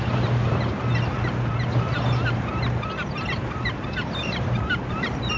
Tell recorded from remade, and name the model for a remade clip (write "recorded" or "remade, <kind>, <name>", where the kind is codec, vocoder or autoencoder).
remade, vocoder, BigVGAN v2